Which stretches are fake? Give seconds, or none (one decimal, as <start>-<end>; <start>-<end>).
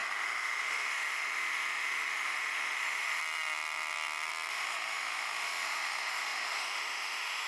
0.0-3.2; 4.5-7.5